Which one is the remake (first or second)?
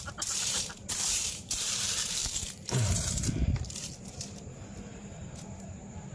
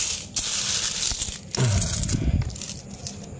first